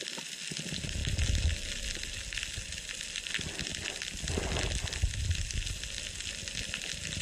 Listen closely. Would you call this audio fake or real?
real